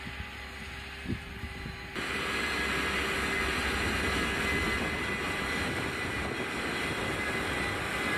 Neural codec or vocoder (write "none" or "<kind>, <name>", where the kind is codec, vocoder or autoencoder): none